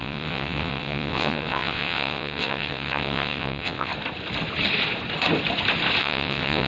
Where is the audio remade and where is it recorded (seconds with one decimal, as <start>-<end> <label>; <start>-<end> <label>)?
0.0-3.9 remade; 3.9-6.0 recorded; 6.0-6.7 remade